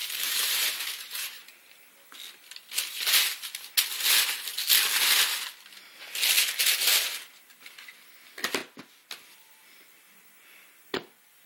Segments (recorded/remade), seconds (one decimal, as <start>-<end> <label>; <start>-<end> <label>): 0.0-1.9 remade; 1.9-10.9 recorded; 10.9-11.5 remade

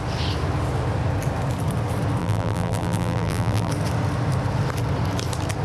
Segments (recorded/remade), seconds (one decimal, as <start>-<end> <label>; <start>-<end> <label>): 0.0-2.2 recorded; 2.2-3.7 remade; 3.7-5.6 recorded

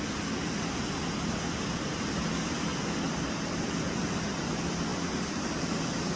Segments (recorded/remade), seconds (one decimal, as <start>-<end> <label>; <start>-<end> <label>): 0.0-2.7 recorded; 2.7-4.0 remade; 4.0-4.9 recorded; 4.9-5.8 remade; 5.8-6.2 recorded

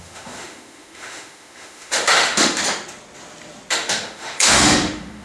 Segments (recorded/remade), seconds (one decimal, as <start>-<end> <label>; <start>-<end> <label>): 0.0-2.6 remade; 2.6-3.7 recorded; 3.7-5.2 remade

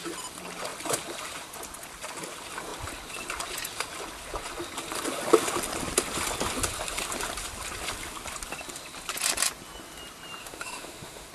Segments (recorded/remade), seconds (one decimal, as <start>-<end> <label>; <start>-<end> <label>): 0.0-10.4 recorded; 10.4-11.3 remade

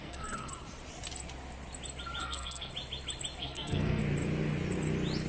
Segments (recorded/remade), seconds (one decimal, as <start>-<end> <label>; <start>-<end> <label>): 0.0-0.5 remade; 0.5-2.2 recorded; 2.2-2.7 remade; 2.7-3.4 recorded; 3.4-4.0 remade; 4.0-5.3 recorded